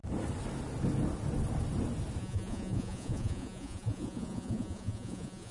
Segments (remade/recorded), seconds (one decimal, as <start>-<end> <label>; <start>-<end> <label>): 0.0-2.2 recorded; 2.2-5.5 remade